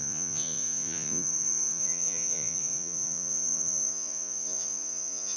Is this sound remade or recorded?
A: remade